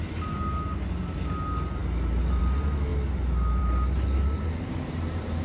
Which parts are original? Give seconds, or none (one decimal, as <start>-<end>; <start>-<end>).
0.0-5.4